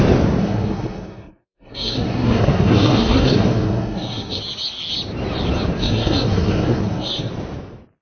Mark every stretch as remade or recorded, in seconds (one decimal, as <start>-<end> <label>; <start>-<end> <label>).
0.0-0.4 recorded; 0.4-4.4 remade; 4.4-5.8 recorded; 5.8-7.3 remade; 7.3-8.0 recorded